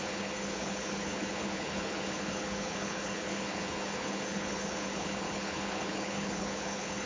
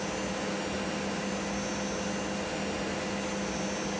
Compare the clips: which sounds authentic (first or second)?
second